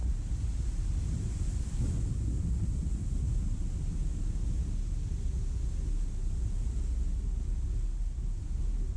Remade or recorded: recorded